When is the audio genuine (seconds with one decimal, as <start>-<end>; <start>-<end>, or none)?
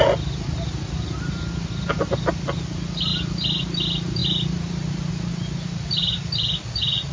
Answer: 0.0-7.1